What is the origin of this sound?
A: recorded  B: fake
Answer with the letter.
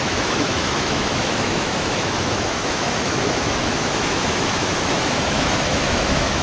B